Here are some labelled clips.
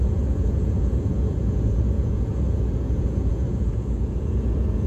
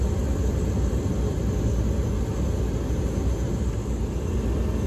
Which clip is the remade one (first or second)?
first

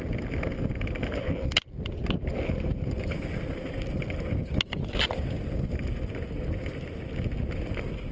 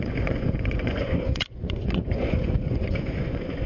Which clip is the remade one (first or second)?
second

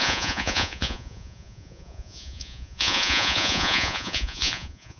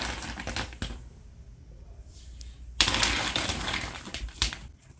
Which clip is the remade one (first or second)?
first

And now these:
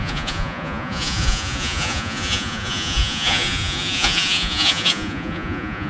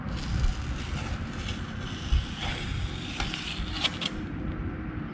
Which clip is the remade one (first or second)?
first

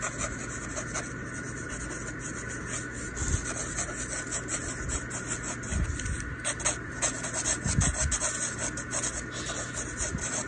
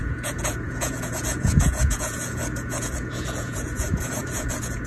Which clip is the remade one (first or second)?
second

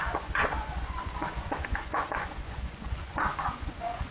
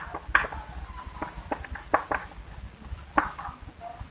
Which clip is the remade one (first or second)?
first